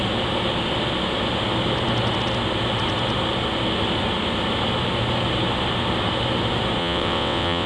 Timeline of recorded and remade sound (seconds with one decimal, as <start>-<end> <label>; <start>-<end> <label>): 0.0-6.8 recorded; 6.8-7.7 remade